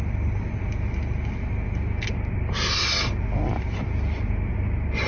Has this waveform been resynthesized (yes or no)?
no